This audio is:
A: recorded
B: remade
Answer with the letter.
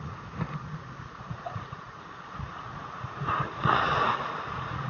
B